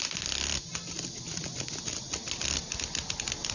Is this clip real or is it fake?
real